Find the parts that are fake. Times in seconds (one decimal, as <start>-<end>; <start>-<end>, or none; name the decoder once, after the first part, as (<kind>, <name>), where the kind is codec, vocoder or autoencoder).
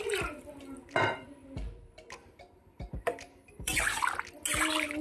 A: 1.4-3.8 (vocoder, BigVGAN v2)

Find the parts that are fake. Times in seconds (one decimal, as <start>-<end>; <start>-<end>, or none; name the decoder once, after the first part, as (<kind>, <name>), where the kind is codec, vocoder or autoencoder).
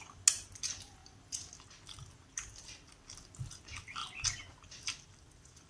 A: 4.0-5.7 (vocoder, BigVGAN v2)